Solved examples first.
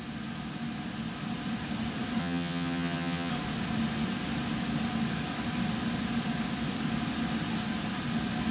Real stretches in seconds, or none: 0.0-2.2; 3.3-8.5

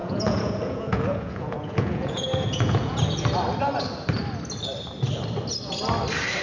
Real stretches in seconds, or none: 3.0-6.4

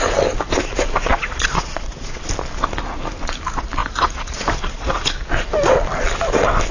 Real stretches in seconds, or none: 0.0-1.1; 2.3-3.8; 5.1-6.7